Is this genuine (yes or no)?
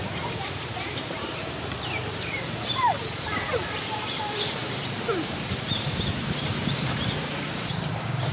no